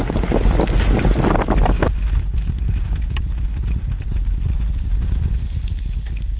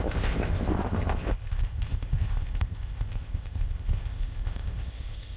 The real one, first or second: first